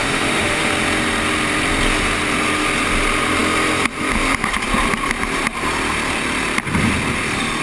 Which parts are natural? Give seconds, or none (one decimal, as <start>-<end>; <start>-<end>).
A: 0.7-7.6